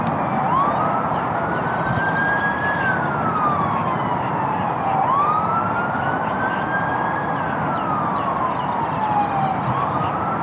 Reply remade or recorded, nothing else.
recorded